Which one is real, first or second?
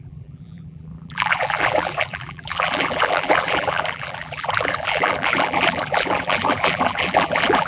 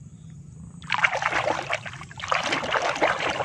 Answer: second